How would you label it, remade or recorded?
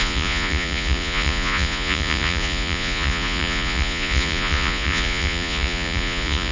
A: remade